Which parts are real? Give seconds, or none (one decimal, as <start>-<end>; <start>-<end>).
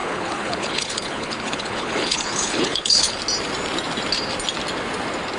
3.2-5.4